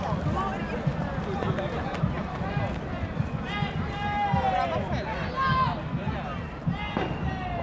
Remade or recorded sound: recorded